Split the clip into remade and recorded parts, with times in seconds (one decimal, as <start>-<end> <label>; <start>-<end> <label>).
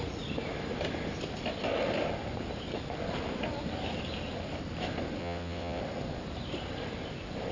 0.0-5.2 recorded; 5.2-5.8 remade; 5.8-7.5 recorded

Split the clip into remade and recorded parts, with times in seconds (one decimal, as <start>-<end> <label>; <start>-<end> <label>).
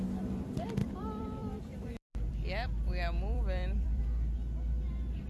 0.0-0.8 recorded; 0.8-4.0 remade; 4.0-5.3 recorded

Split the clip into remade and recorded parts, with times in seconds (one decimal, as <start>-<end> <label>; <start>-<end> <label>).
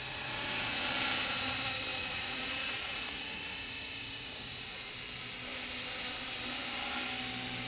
0.0-0.9 remade; 0.9-1.9 recorded; 1.9-4.9 remade; 4.9-7.7 recorded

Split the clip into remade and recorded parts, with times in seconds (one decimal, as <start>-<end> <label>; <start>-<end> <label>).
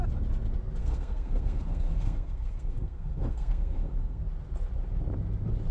0.0-0.8 recorded; 0.8-4.2 remade; 4.2-5.7 recorded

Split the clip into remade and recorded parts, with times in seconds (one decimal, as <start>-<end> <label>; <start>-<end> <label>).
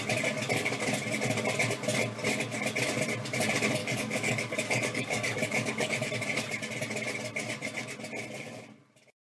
0.0-3.8 recorded; 3.8-6.1 remade; 6.1-9.2 recorded